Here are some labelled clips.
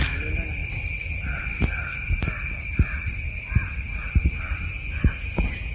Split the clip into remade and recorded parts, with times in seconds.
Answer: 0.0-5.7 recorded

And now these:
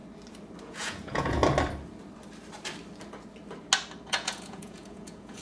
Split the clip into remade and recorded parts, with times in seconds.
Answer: 0.0-0.6 recorded; 0.6-1.4 remade; 1.4-4.1 recorded; 4.1-5.4 remade

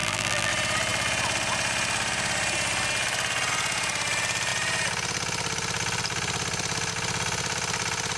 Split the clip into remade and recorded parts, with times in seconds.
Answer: 0.0-0.5 remade; 0.5-8.2 recorded

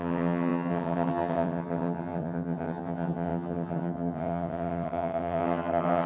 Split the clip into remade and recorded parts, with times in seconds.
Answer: 0.0-6.1 remade